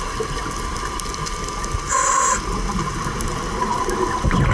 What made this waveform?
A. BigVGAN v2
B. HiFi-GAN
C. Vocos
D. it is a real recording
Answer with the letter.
D